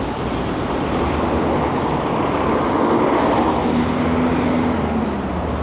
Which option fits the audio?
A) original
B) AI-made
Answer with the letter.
A